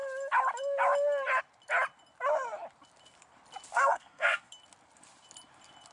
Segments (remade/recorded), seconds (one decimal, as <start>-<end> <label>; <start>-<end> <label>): 0.0-3.7 recorded; 3.7-4.5 remade; 4.5-5.9 recorded